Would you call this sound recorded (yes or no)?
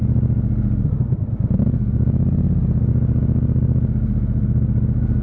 yes